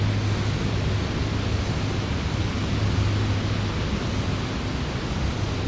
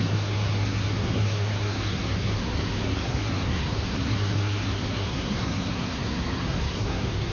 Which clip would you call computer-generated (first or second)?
second